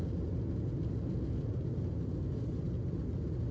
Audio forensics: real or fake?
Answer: real